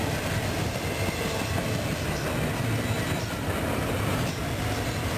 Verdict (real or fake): real